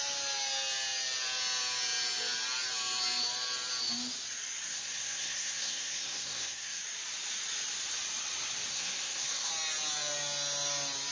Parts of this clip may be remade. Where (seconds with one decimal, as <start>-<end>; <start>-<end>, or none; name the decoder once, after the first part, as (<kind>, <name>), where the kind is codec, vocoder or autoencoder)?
4.7-6.8 (codec, SNAC); 8.7-9.5